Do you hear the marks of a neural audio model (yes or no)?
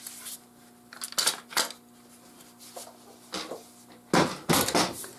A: no